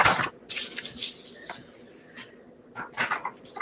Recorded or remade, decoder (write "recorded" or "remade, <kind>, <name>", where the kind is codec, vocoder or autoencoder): recorded